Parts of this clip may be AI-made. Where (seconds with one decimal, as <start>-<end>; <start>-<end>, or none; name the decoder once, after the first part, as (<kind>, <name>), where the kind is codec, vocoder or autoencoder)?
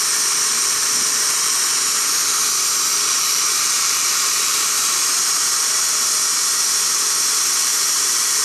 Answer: 0.5-1.6 (vocoder, BigVGAN v2); 2.9-5.9; 7.6-8.4